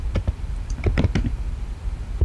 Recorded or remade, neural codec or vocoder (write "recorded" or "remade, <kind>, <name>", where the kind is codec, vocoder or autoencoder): remade, vocoder, BigVGAN v2